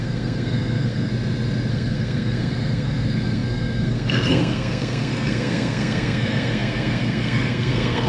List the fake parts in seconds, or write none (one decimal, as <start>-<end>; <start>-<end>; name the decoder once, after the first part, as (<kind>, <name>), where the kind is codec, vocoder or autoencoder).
0.0-1.1 (codec, SNAC); 1.7-8.1